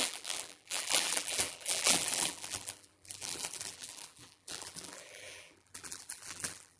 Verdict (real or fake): fake